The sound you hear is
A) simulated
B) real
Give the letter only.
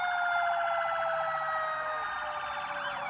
B